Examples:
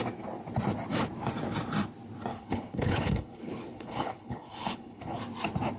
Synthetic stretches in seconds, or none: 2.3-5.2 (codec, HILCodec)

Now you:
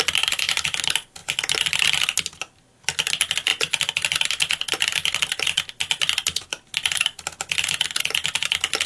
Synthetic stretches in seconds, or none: none

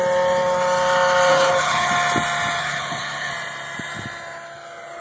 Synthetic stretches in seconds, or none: 1.3-1.9 (codec, HILCodec); 2.6-3.3

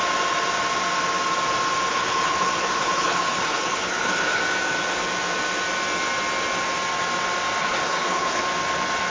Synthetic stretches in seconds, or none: 1.9-4.4 (codec, HILCodec); 7.6-8.4

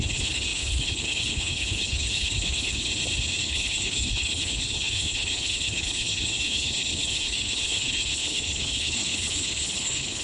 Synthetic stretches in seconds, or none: 0.0-2.9 (codec, HILCodec); 3.4-10.2

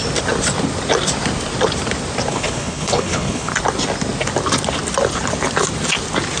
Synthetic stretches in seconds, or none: 2.3-3.5 (codec, HILCodec)

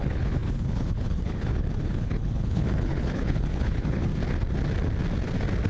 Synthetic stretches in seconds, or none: 0.0-4.1 (codec, HILCodec)

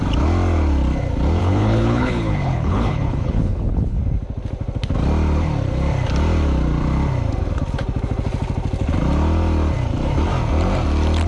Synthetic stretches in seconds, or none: 1.4-4.0 (codec, HILCodec)